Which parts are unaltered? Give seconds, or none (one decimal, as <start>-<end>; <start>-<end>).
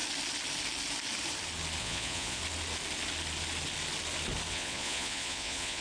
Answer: 0.0-1.8; 2.4-4.5